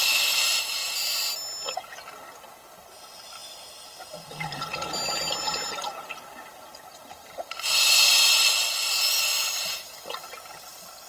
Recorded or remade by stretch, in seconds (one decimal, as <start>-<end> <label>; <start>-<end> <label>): 0.0-11.1 recorded